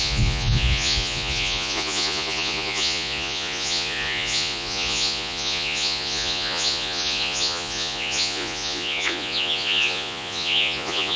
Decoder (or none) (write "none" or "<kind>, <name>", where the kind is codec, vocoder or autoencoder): vocoder, Vocos